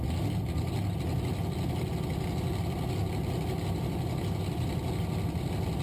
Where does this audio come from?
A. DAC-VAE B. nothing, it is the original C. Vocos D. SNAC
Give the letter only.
B